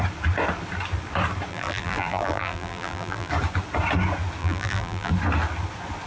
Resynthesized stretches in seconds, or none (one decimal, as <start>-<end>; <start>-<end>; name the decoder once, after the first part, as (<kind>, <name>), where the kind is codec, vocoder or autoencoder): 1.5-3.3 (vocoder, BigVGAN v2); 4.4-5.1